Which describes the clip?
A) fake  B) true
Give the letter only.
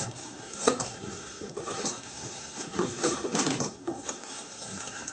A